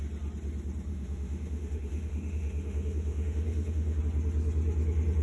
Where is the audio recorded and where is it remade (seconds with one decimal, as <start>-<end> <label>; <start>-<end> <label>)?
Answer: 0.0-0.9 recorded; 0.9-4.0 remade; 4.0-5.2 recorded